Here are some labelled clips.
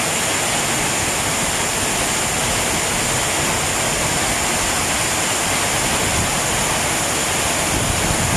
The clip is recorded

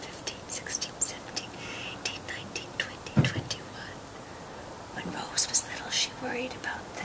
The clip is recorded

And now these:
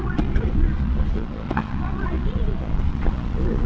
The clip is remade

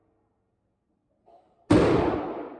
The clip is recorded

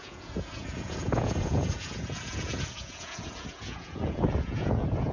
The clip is remade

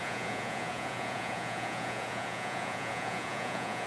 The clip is remade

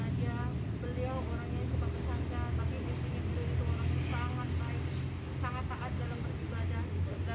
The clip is recorded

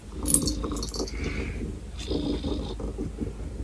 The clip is recorded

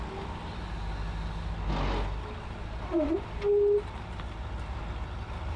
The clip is recorded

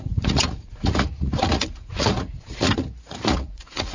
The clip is remade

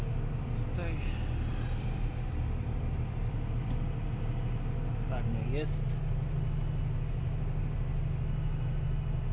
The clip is recorded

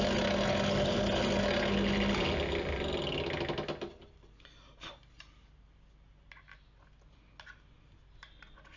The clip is recorded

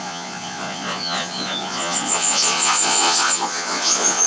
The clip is remade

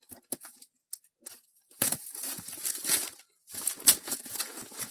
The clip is remade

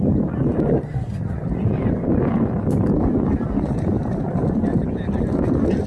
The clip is recorded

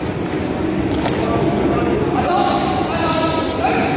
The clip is recorded